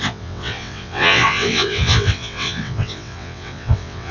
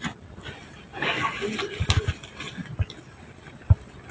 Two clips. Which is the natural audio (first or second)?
second